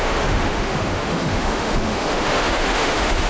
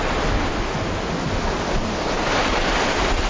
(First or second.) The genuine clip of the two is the second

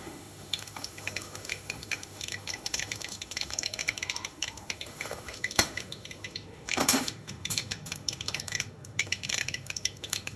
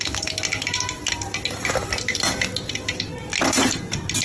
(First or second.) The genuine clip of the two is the second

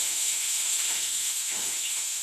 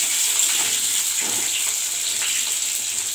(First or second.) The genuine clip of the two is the second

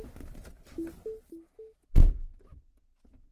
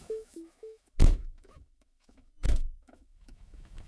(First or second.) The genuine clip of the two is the first